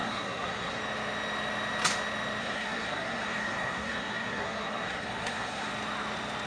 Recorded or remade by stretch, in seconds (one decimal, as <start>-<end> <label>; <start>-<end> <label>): 0.0-0.8 remade; 0.8-2.4 recorded; 2.4-5.7 remade; 5.7-6.5 recorded